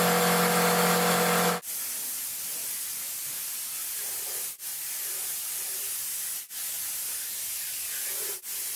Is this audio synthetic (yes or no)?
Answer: no